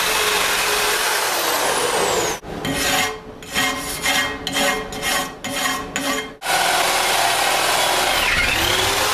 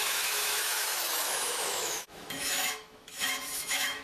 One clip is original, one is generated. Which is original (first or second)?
first